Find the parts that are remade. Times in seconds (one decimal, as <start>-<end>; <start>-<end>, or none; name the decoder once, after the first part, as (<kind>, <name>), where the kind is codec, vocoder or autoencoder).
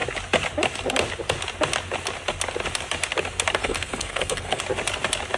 3.6-4.6 (codec, SNAC)